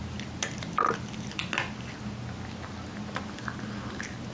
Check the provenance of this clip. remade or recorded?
recorded